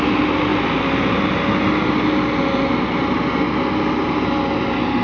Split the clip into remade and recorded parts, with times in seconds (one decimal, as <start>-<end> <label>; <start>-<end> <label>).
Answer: 0.0-5.0 recorded